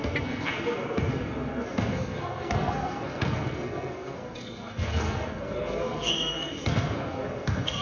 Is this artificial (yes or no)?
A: yes